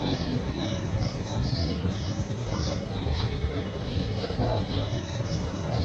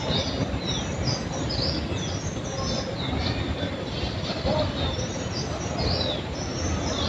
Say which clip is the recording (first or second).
second